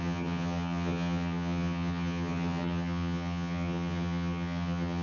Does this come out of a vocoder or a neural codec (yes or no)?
yes